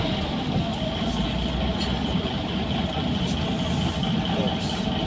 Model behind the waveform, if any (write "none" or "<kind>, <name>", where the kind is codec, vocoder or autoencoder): none